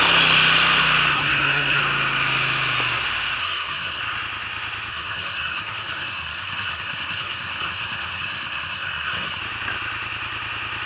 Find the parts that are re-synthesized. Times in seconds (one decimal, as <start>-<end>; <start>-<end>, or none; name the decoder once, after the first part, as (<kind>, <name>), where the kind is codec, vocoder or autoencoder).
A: 1.1-1.8 (codec, SNAC); 3.4-4.0; 4.9-9.4